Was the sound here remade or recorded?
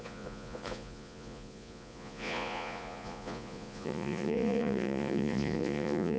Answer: remade